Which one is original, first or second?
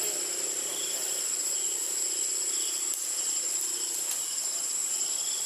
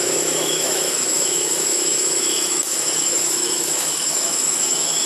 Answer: first